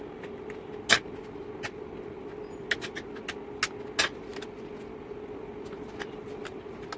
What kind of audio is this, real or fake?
real